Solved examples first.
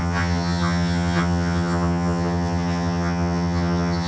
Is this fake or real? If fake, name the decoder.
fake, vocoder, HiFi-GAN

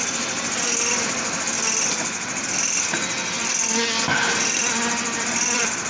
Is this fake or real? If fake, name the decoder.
real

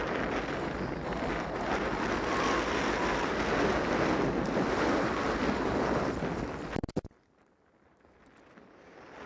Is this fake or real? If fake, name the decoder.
real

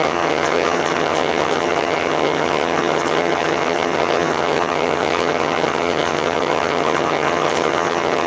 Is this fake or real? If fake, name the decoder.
fake, vocoder, HiFi-GAN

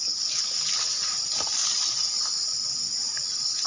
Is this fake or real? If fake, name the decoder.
real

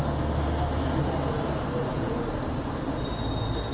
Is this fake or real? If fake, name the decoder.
real